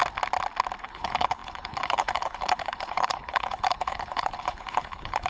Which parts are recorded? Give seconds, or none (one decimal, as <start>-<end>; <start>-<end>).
0.0-0.8